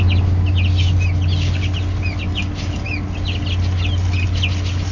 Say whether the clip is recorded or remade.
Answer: recorded